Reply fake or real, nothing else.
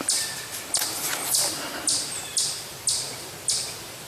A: real